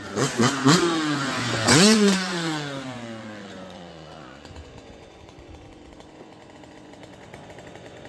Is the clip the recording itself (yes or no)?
no